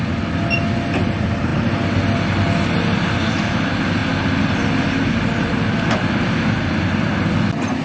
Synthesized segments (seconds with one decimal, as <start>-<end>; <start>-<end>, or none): none